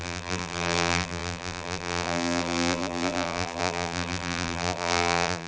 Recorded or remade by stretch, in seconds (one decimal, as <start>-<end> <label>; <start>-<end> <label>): 0.0-5.5 remade